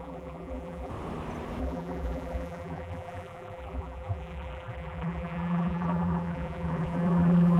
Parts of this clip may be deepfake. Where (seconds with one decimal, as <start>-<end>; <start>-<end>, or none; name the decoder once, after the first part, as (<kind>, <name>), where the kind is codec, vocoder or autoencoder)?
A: 0.0-0.9 (vocoder, BigVGAN v2); 1.6-7.6